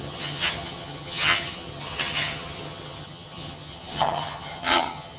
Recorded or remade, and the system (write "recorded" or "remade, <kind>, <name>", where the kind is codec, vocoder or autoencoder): remade, vocoder, HiFi-GAN